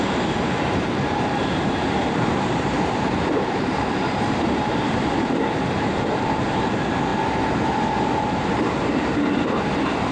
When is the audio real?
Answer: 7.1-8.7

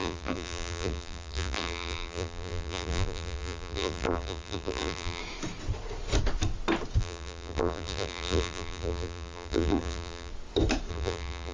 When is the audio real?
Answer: 5.2-7.0; 10.3-10.9

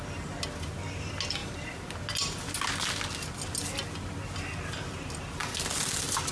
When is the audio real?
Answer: 0.0-6.3